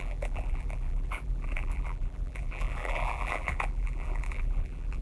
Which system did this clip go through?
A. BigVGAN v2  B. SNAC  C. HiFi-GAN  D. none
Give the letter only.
A